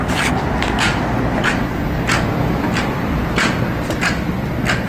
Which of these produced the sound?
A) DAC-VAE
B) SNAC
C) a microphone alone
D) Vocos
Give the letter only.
C